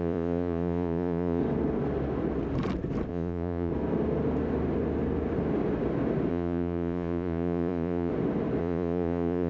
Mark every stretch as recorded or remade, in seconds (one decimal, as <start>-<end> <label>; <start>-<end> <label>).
0.0-1.4 remade; 1.4-3.1 recorded; 3.1-3.7 remade; 3.7-6.3 recorded; 6.3-8.1 remade; 8.1-8.6 recorded; 8.6-9.5 remade